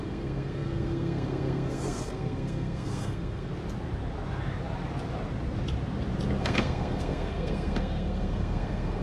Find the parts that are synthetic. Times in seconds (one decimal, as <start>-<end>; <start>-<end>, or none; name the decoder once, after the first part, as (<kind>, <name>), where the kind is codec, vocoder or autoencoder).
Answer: 0.0-3.5 (codec, SNAC); 6.4-9.0